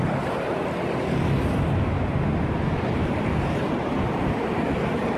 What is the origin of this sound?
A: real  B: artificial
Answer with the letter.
A